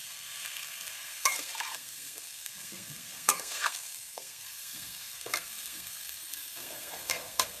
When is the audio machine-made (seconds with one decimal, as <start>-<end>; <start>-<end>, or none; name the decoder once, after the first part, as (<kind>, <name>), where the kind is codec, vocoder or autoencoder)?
0.0-7.6 (codec, SNAC)